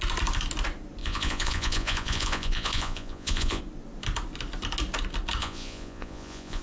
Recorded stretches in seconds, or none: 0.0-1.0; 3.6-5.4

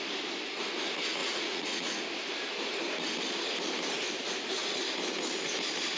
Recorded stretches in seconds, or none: 0.0-1.2; 2.0-6.0

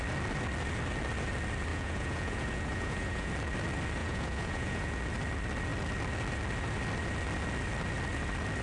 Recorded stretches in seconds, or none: 0.0-1.7; 3.3-4.0; 5.0-8.6

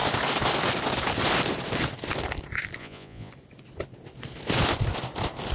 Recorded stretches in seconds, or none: 0.0-2.8; 3.3-5.5

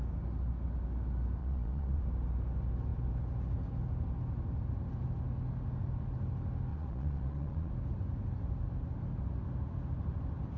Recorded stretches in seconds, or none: 0.0-1.4; 2.0-6.7; 7.7-10.6